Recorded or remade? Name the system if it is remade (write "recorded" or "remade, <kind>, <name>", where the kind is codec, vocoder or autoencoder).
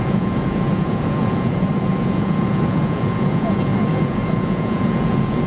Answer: remade, vocoder, Vocos